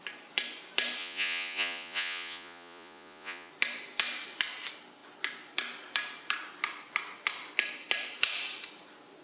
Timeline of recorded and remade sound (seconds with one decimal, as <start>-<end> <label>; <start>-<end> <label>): 0.0-1.0 recorded; 1.0-3.5 remade; 3.5-9.2 recorded